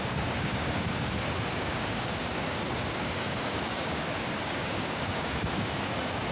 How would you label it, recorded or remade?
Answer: remade